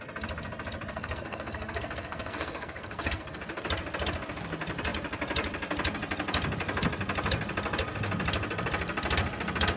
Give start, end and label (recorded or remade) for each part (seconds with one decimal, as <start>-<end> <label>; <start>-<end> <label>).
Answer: 0.0-0.9 recorded; 0.9-3.4 remade; 3.4-9.8 recorded